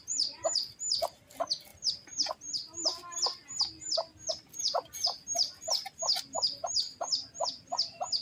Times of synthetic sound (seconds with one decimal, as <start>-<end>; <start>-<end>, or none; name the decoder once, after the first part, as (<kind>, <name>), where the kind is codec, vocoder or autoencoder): 1.7-2.3 (vocoder, BigVGAN v2)